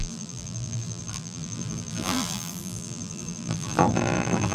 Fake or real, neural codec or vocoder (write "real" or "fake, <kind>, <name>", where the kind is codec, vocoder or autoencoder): fake, vocoder, BigVGAN v2